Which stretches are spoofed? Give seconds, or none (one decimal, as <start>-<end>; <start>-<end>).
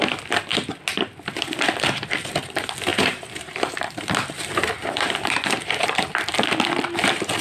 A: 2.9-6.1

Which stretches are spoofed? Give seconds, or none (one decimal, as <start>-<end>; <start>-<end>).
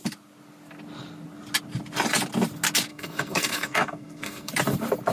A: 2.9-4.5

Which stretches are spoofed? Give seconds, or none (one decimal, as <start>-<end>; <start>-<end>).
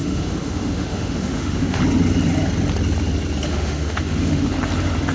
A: 0.0-1.8; 3.5-4.5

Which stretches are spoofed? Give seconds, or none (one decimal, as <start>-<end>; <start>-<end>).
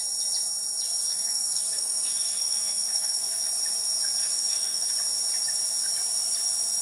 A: 1.0-3.5; 4.2-4.9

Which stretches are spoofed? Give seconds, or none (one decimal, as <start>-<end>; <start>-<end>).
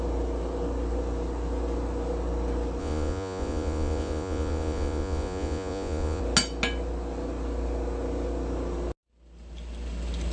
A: 2.8-6.2